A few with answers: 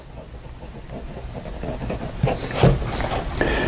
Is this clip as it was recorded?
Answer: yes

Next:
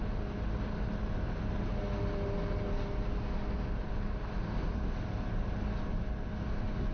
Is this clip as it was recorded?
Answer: yes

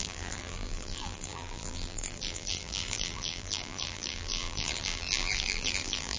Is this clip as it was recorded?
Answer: no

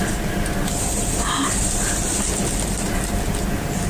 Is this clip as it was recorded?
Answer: yes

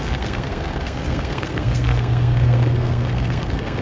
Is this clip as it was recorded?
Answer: no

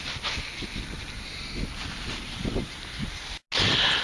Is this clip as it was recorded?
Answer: yes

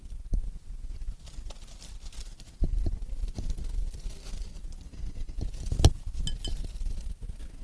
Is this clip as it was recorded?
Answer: yes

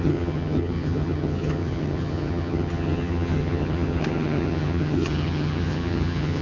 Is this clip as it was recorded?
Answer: no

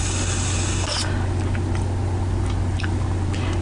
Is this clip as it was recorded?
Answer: yes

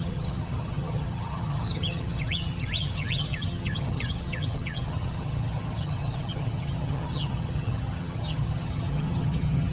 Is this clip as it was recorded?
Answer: no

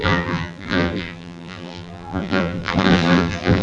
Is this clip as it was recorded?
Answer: no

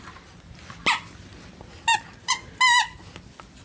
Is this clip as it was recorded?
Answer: yes